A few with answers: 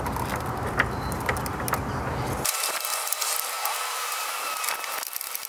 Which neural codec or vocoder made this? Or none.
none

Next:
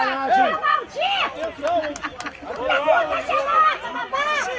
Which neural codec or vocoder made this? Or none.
none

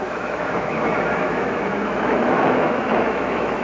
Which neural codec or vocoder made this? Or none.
autoencoder, DAC-VAE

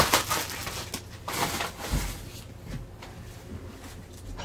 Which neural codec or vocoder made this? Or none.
none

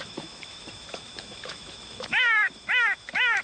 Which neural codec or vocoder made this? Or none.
autoencoder, DAC-VAE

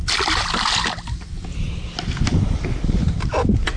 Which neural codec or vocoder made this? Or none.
none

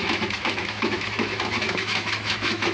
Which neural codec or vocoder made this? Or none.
autoencoder, DAC-VAE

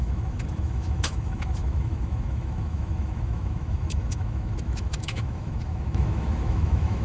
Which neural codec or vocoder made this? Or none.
autoencoder, DAC-VAE